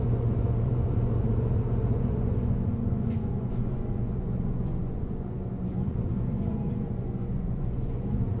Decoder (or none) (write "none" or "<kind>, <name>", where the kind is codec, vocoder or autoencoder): vocoder, Vocos